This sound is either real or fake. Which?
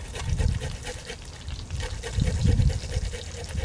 real